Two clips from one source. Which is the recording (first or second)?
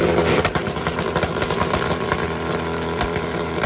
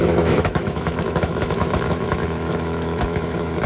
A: first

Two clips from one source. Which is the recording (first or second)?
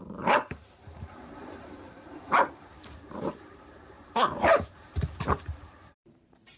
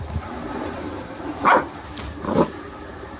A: second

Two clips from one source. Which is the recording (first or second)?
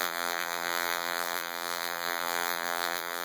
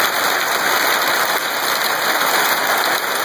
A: second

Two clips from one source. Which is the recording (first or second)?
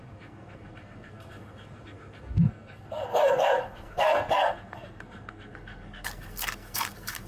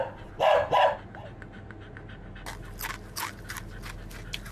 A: second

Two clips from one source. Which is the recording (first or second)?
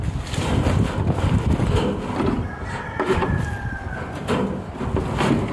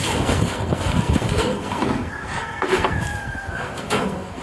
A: first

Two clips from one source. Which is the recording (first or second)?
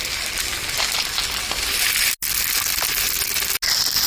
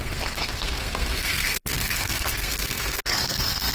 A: first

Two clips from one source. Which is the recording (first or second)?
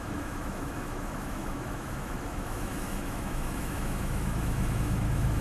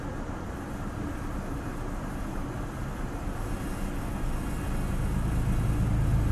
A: second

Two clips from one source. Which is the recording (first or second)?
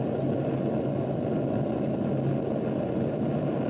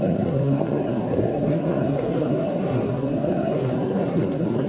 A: first